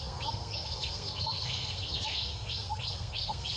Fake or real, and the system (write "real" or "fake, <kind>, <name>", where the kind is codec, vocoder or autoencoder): fake, codec, SNAC